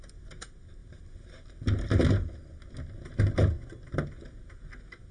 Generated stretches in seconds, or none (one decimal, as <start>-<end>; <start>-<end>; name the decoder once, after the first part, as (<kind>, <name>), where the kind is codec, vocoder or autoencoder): none